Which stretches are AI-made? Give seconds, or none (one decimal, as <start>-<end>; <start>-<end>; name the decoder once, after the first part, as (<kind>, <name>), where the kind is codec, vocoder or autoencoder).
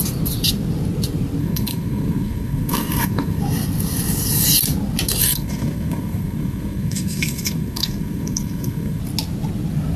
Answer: 1.4-3.4 (codec, SNAC); 5.2-9.0